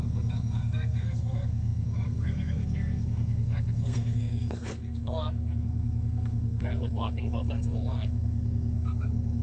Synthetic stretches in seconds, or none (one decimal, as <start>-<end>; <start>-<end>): 0.0-9.4